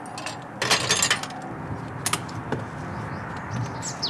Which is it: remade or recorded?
recorded